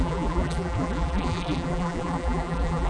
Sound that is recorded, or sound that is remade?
remade